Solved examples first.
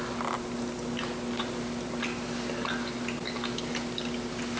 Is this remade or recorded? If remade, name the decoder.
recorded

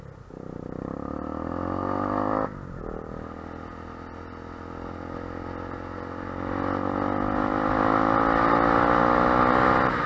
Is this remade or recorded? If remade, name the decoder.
recorded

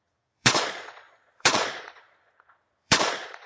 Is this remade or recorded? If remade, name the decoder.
remade, vocoder, Vocos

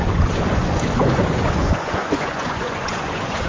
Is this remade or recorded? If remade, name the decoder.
remade, vocoder, Vocos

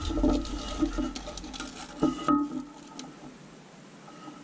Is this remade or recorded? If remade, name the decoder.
recorded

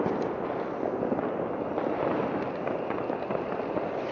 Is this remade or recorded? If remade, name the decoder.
recorded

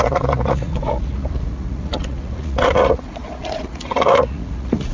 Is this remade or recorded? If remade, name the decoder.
remade, vocoder, Vocos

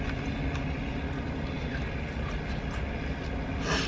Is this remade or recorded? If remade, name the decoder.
recorded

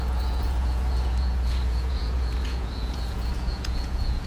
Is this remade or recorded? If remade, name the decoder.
remade, vocoder, Vocos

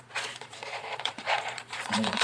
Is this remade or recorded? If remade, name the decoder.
remade, vocoder, Vocos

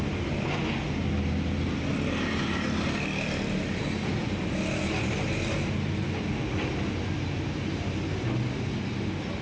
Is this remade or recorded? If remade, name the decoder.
recorded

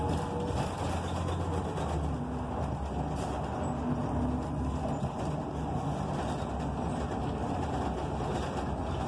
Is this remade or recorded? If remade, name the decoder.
recorded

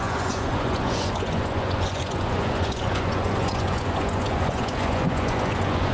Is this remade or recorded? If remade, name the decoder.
remade, vocoder, Vocos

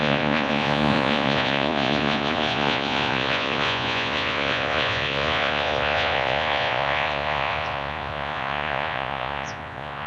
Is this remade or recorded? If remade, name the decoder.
remade, vocoder, Vocos